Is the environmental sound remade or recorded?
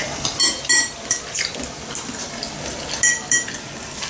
recorded